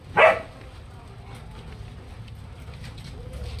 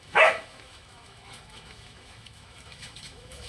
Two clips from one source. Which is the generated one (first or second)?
second